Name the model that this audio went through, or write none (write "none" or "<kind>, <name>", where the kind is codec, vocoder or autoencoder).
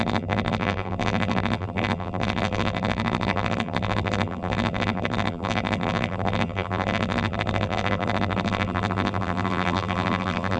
vocoder, BigVGAN v2